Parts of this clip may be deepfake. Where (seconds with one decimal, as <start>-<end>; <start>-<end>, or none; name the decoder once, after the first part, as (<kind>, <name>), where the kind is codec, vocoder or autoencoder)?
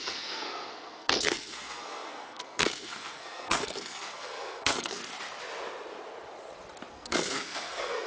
0.0-5.0 (codec, SNAC); 6.9-8.1